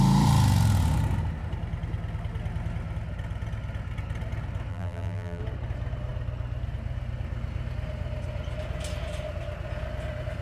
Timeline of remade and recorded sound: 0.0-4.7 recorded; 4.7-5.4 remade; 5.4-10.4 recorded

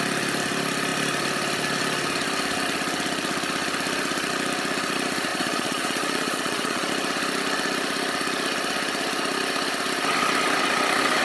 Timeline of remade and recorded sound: 0.0-5.3 recorded; 5.3-6.9 remade; 6.9-11.2 recorded

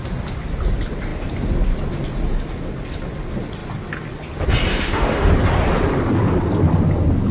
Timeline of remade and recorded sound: 0.0-4.7 recorded; 4.7-5.3 remade; 5.3-7.3 recorded

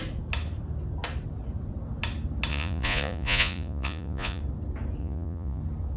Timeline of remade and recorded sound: 0.0-2.5 recorded; 2.5-4.4 remade; 4.4-5.0 recorded; 5.0-5.6 remade; 5.6-6.0 recorded

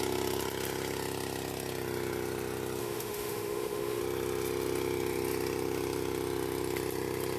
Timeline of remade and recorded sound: 0.0-2.8 recorded; 2.8-4.0 remade; 4.0-7.4 recorded